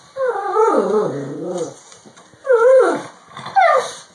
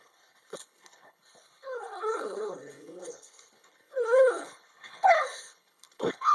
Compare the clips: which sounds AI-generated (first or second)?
second